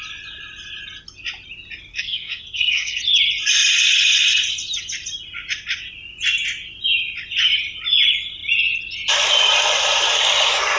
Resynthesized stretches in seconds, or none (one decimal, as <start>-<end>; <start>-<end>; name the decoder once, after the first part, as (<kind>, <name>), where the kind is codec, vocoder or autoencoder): 1.9-3.0 (codec, SNAC)